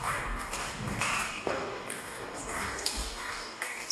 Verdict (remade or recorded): remade